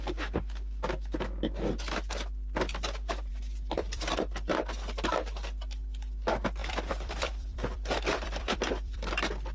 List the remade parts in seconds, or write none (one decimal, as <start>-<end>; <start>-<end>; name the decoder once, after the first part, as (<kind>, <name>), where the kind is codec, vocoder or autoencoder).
3.3-4.1 (vocoder, BigVGAN v2); 6.6-9.1

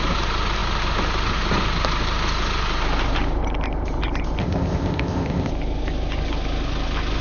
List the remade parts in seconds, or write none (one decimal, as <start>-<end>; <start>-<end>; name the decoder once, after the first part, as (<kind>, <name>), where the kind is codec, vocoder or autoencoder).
4.4-5.5 (codec, ZipCodec)

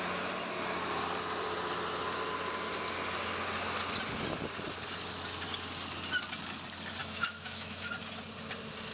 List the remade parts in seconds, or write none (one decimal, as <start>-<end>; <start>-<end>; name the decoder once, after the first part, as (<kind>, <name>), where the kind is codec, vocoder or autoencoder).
7.0-7.9 (autoencoder, DAC-VAE)

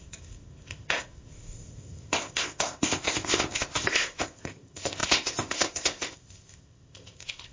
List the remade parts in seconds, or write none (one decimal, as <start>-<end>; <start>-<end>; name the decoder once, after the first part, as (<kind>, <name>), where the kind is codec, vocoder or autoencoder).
0.0-7.5 (codec, ZipCodec)